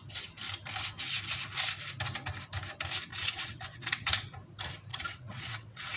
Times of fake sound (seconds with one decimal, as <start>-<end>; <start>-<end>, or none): 3.1-4.1; 4.9-6.0